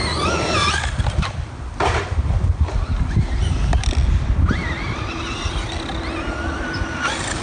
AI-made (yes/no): no